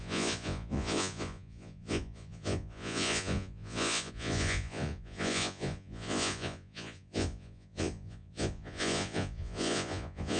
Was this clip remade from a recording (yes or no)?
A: yes